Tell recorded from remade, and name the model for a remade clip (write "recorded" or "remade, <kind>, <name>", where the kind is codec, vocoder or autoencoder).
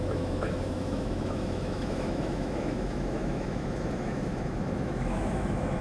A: remade, autoencoder, DAC-VAE